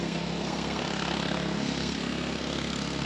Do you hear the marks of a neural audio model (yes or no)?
yes